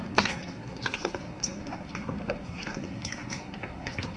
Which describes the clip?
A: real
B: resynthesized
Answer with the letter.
B